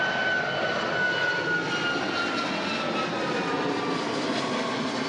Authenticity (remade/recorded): recorded